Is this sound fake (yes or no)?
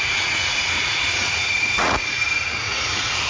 yes